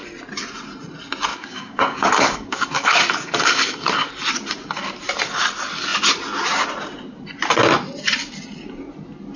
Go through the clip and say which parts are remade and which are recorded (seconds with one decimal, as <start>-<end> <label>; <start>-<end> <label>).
0.0-1.3 recorded; 1.3-4.1 remade; 4.1-9.4 recorded